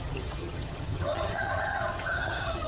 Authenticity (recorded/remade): remade